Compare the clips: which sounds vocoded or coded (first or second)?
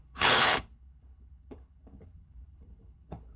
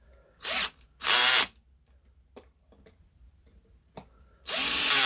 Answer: first